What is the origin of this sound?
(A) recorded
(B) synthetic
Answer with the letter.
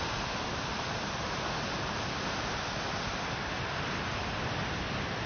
A